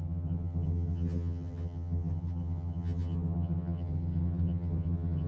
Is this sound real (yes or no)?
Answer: no